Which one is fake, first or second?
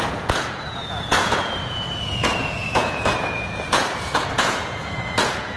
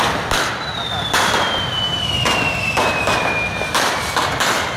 first